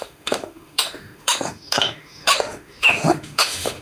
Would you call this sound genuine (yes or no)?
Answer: no